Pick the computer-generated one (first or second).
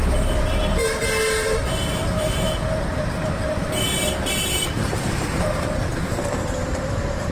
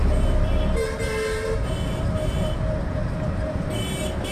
first